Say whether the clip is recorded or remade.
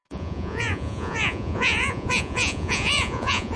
remade